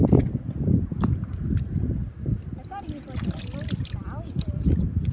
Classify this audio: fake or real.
fake